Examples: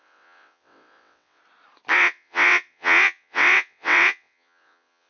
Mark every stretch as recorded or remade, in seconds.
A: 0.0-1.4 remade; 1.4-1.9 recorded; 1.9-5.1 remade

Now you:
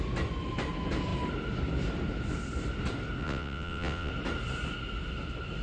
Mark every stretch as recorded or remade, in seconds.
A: 0.0-3.2 recorded; 3.2-4.1 remade; 4.1-5.6 recorded

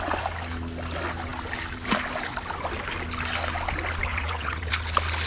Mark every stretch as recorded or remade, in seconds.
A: 0.0-4.1 recorded; 4.1-4.7 remade; 4.7-5.3 recorded

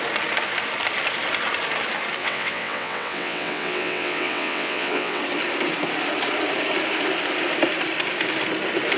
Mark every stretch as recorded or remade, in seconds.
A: 0.0-2.2 recorded; 2.2-5.2 remade; 5.2-9.0 recorded